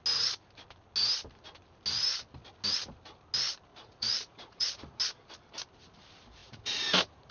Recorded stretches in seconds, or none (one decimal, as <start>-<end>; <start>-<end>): 0.0-3.7; 5.0-6.4